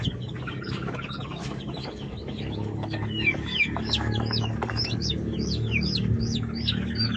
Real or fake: fake